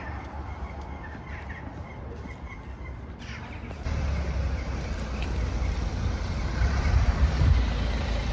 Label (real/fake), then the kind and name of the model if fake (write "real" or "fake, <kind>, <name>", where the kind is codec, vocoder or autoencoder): real